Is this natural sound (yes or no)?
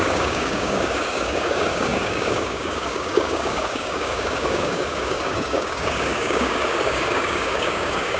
no